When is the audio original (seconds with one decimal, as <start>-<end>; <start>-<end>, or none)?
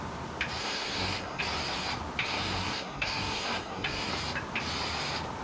0.0-0.6; 1.4-2.2; 4.1-5.4